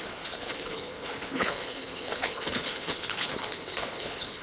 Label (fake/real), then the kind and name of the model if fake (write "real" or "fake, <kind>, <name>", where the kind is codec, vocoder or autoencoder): fake, codec, HILCodec